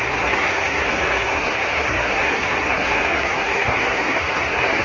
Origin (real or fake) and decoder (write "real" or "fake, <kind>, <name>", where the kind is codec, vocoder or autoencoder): fake, codec, SNAC